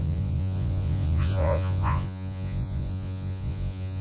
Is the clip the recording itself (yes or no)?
no